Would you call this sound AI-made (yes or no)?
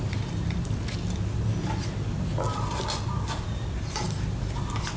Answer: no